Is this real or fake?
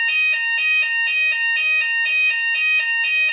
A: real